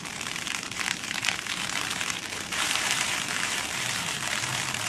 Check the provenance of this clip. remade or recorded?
remade